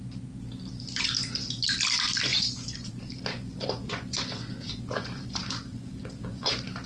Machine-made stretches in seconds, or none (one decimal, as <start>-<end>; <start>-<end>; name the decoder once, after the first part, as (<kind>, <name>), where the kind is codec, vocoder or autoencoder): 2.3-2.9 (vocoder, Vocos); 3.3-6.5